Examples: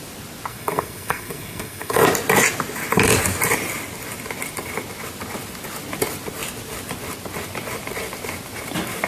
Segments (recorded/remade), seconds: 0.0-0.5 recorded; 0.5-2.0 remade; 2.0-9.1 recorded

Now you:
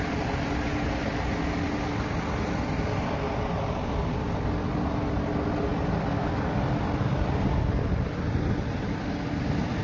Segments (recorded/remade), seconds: 0.0-9.8 recorded

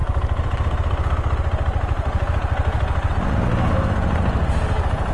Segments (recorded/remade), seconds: 0.0-5.1 recorded